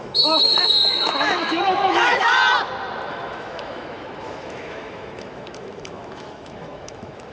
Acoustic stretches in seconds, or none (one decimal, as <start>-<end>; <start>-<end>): 2.4-3.1